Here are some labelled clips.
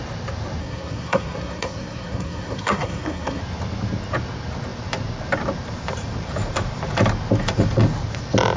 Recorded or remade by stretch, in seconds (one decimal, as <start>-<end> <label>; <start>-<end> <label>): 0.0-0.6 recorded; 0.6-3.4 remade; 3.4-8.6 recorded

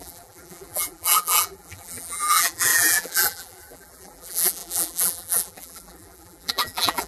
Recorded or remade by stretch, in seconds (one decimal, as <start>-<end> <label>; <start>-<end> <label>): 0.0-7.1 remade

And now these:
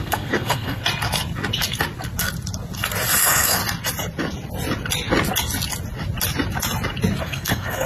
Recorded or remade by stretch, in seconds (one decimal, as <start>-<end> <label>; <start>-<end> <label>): 0.0-0.8 remade; 0.8-3.2 recorded; 3.2-3.6 remade; 3.6-7.2 recorded; 7.2-7.9 remade

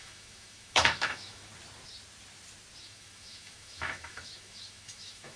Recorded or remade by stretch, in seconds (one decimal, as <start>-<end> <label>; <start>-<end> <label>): 0.0-1.5 remade; 1.5-2.8 recorded; 2.8-5.4 remade

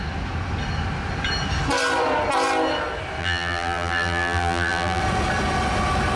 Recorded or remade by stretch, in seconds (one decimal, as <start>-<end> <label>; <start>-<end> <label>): 0.0-3.2 recorded; 3.2-5.0 remade; 5.0-6.2 recorded

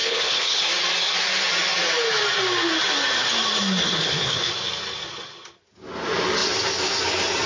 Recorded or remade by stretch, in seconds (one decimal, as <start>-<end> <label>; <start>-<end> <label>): 0.0-0.6 remade; 0.6-3.8 recorded; 3.8-4.5 remade; 4.5-7.5 recorded

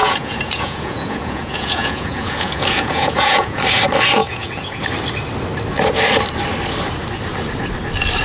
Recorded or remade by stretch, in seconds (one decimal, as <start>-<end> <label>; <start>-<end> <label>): 0.0-3.6 remade; 3.6-4.2 recorded; 4.2-4.8 remade; 4.8-8.2 recorded

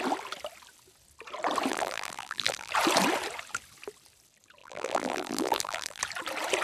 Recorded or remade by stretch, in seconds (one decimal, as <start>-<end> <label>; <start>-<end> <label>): 0.0-1.7 recorded; 1.7-2.7 remade; 2.7-4.6 recorded; 4.6-6.0 remade; 6.0-6.6 recorded